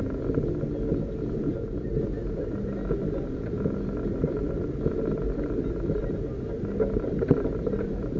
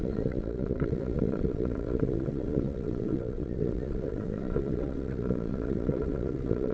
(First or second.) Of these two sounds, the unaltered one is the first